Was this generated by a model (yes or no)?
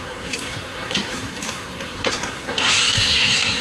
yes